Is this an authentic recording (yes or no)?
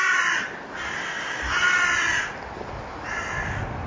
yes